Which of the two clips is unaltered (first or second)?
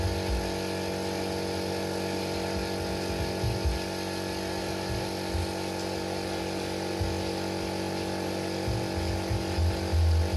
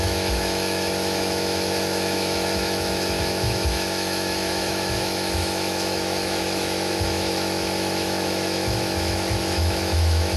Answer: first